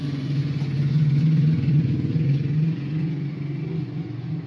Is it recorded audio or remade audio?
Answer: remade